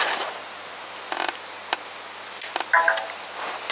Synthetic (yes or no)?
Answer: no